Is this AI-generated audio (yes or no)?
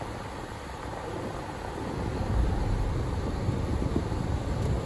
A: no